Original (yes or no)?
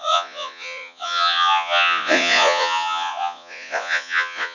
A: no